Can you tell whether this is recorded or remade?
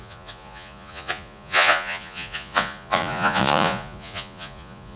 remade